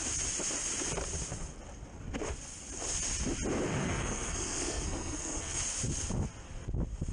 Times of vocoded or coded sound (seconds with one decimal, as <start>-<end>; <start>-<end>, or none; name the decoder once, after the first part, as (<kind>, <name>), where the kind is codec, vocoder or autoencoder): 3.8-5.6 (codec, SNAC)